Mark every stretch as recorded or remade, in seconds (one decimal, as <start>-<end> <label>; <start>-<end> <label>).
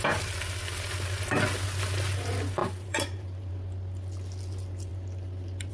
0.0-2.6 recorded; 2.6-3.5 remade; 3.5-5.7 recorded